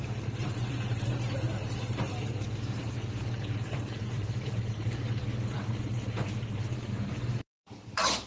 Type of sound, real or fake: fake